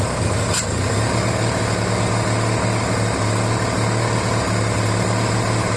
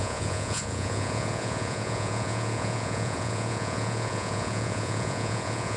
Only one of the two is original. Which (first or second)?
first